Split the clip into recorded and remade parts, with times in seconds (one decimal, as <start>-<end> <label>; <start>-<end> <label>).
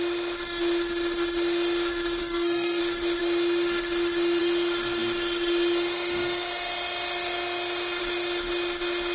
0.0-2.2 recorded; 2.2-2.8 remade; 2.8-9.1 recorded